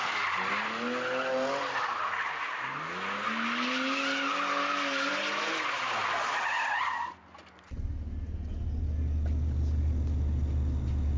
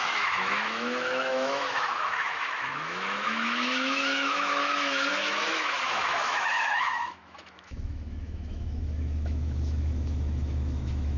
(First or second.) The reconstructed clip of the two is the second